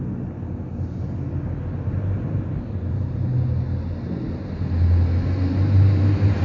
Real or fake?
real